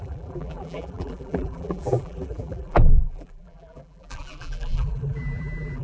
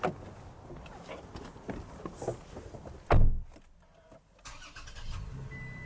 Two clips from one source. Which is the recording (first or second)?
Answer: second